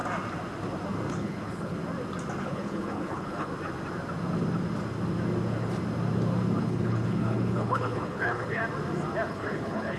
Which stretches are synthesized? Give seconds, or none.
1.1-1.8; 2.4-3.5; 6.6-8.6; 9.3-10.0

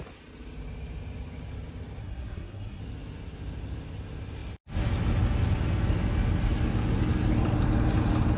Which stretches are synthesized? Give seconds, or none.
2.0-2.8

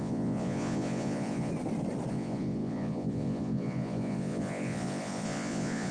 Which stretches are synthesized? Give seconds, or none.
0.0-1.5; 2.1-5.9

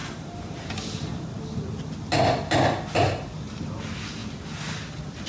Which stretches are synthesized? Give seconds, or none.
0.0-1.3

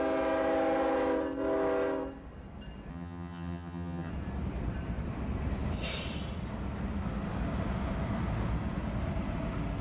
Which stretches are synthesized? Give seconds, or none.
2.9-4.1

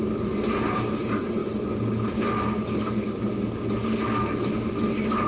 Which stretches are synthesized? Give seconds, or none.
none

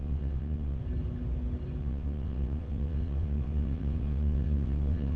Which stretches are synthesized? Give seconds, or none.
0.0-0.8; 1.8-5.2